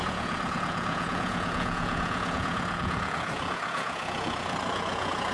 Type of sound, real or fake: fake